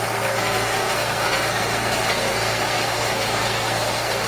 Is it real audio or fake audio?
fake